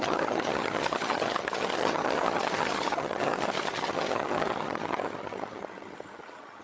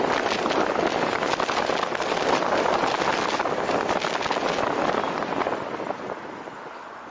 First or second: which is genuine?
second